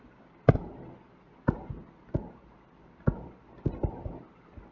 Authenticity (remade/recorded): recorded